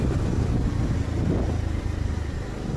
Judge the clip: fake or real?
real